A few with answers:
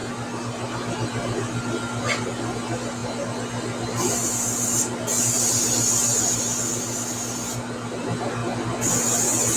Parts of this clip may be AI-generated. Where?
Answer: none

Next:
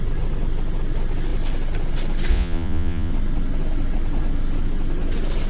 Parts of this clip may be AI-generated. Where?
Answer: 2.3-3.1 (vocoder, Vocos)